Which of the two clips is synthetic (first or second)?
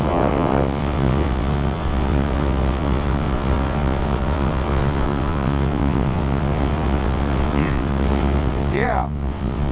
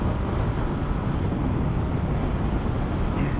first